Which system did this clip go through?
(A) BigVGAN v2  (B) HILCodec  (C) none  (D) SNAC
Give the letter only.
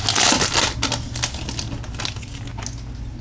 C